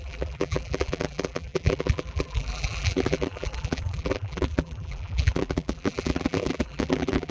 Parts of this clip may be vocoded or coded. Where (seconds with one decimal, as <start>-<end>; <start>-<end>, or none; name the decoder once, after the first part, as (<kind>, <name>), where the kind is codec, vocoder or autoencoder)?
0.0-7.3 (vocoder, BigVGAN v2)